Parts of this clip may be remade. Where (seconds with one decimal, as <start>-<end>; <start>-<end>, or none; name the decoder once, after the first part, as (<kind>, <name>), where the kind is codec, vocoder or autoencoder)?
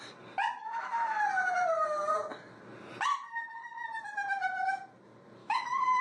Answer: 0.6-1.2 (autoencoder, DAC-VAE); 5.4-6.0